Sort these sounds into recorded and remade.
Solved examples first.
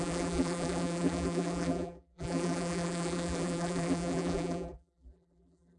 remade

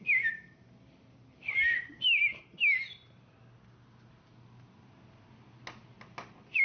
recorded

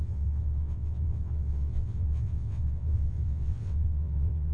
remade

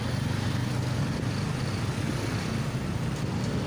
recorded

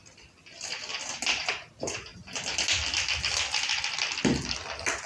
recorded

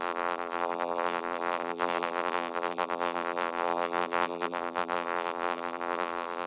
remade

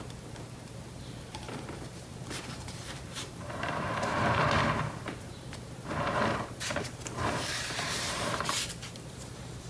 remade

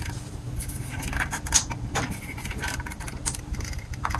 recorded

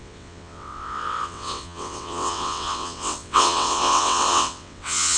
remade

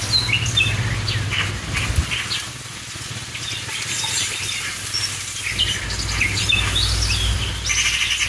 recorded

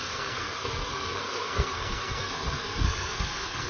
remade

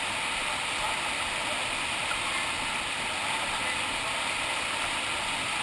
recorded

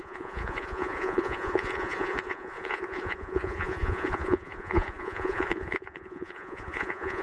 remade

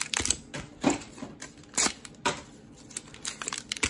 recorded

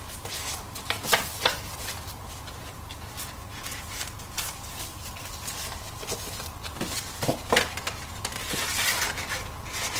recorded